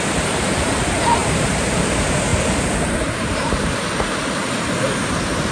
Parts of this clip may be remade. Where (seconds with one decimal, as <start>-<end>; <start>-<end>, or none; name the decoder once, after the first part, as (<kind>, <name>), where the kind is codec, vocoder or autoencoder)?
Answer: 0.0-5.5 (vocoder, BigVGAN v2)